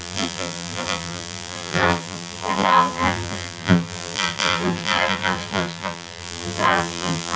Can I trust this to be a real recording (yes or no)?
no